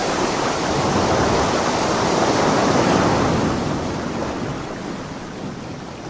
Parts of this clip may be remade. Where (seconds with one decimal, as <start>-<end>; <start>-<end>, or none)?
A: 0.0-0.9